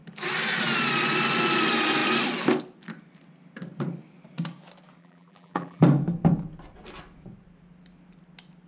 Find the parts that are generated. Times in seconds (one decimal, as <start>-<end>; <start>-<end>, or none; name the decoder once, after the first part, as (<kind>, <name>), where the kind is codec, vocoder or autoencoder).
5.0-5.8 (vocoder, BigVGAN v2)